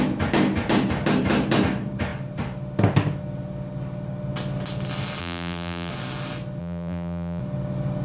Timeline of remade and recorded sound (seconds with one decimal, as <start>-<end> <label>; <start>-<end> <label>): 0.0-5.2 recorded; 5.2-5.9 remade; 5.9-6.6 recorded; 6.6-7.4 remade; 7.4-8.0 recorded